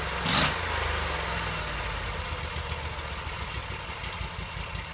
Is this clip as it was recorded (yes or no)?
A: yes